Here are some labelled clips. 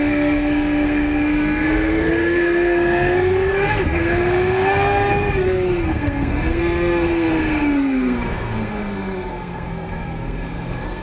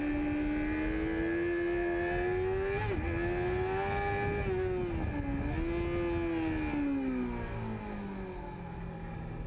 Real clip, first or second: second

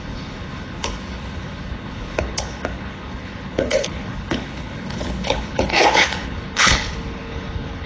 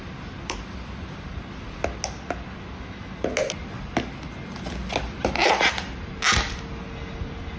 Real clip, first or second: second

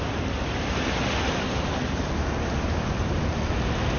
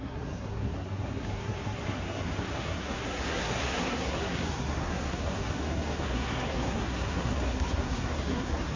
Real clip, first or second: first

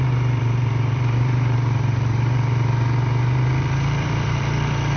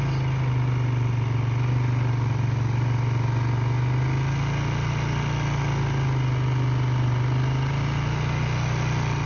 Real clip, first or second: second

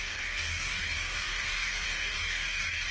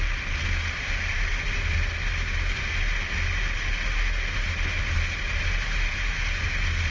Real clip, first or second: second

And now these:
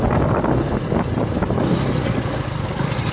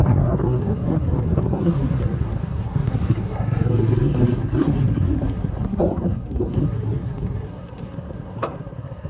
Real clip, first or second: first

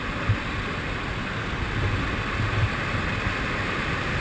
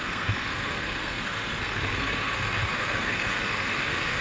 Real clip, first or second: first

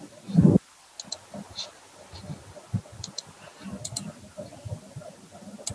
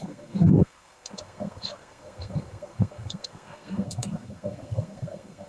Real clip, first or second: first